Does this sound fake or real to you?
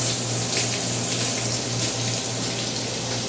real